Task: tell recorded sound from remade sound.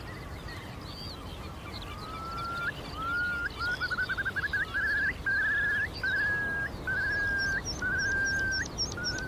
recorded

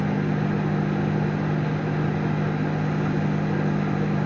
recorded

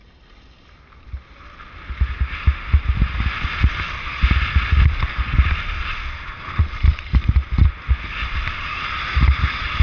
recorded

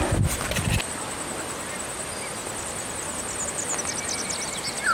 recorded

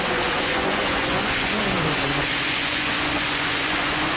remade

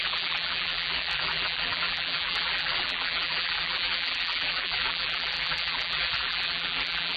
remade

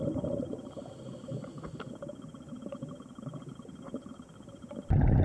recorded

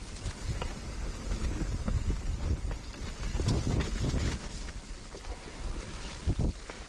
recorded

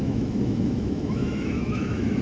remade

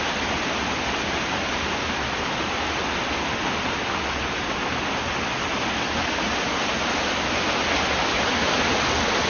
recorded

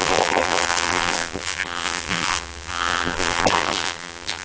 remade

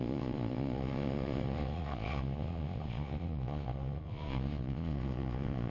remade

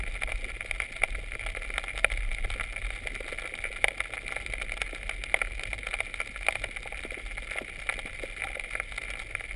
recorded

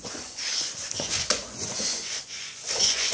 remade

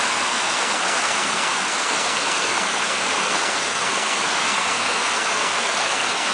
remade